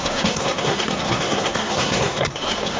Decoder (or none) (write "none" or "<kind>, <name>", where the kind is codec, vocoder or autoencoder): codec, SNAC